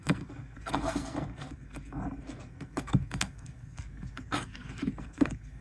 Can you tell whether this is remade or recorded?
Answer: remade